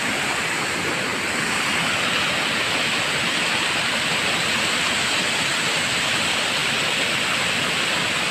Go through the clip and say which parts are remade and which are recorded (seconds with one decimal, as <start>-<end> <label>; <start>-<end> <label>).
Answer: 0.0-8.3 recorded